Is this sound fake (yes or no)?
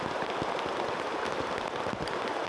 no